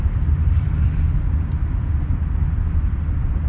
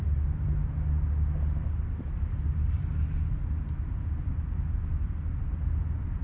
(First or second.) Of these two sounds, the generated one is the first